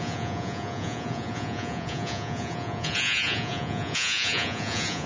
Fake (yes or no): yes